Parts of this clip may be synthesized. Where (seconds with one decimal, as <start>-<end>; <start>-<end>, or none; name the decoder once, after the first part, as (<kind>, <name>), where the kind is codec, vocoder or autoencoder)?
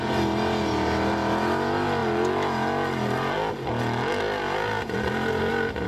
none